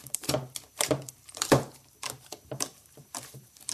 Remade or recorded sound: remade